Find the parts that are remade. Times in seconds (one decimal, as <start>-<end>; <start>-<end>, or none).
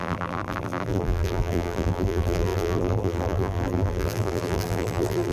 0.0-5.3